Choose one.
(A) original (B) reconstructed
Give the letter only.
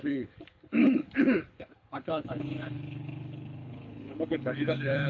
B